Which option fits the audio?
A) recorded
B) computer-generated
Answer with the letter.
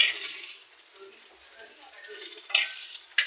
A